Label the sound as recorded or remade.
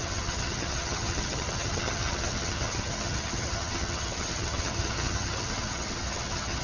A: remade